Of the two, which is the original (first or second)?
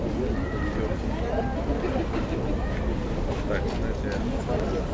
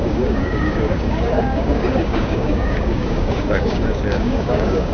first